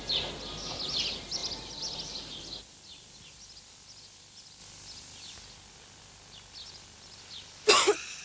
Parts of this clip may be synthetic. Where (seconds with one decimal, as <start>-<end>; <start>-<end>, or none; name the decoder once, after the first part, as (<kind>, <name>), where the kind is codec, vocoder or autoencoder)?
none